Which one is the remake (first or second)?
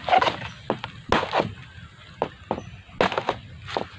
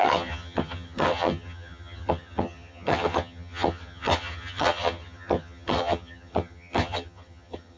second